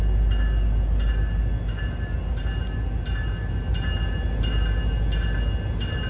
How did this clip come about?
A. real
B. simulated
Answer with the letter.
A